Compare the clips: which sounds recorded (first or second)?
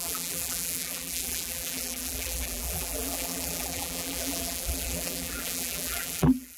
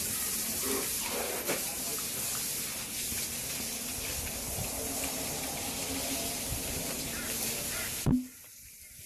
second